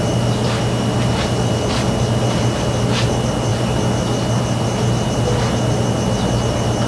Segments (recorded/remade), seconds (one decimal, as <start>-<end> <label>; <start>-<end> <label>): 0.0-6.9 recorded